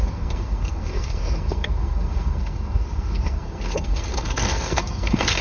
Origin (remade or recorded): remade